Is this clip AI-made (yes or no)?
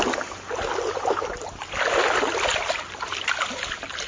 no